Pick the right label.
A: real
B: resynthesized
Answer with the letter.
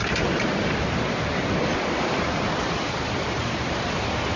B